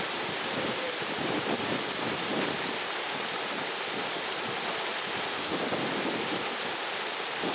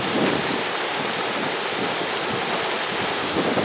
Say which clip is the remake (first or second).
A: first